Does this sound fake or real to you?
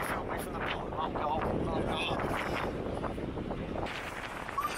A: real